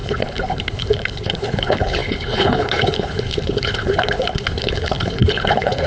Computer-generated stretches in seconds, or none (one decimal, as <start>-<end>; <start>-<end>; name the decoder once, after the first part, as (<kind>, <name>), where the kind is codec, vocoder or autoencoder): 0.0-5.9 (codec, HILCodec)